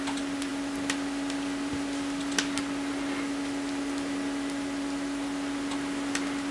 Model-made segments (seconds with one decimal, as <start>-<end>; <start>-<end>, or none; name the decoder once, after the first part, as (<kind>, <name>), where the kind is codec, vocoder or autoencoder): none